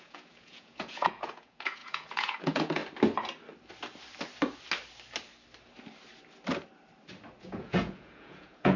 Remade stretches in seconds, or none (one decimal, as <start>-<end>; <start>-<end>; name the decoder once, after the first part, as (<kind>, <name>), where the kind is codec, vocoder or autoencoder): 0.0-2.8 (vocoder, Vocos); 7.4-8.8

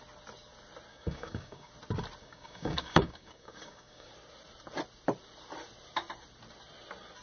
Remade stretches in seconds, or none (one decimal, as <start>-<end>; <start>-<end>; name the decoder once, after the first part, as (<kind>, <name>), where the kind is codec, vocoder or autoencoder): 0.9-1.7 (codec, DAC); 2.2-4.1

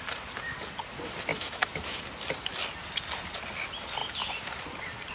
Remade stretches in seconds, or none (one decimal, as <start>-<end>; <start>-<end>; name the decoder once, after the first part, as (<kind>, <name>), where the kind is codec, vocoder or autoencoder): 1.3-2.0 (autoencoder, DAC-VAE)